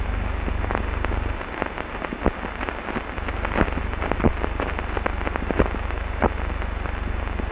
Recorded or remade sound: recorded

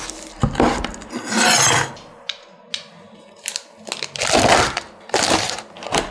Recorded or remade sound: recorded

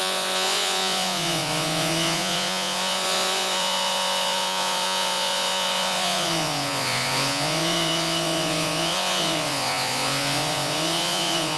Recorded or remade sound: remade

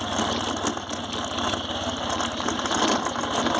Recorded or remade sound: recorded